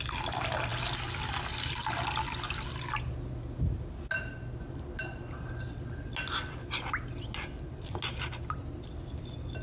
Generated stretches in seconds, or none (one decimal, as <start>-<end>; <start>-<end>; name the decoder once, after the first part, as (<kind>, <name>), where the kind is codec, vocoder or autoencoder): none